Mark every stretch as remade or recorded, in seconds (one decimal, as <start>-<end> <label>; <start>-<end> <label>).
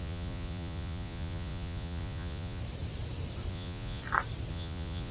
0.0-2.6 remade; 2.6-3.5 recorded; 3.5-4.0 remade; 4.0-4.5 recorded; 4.5-5.1 remade